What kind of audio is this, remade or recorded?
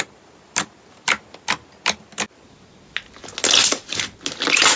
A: recorded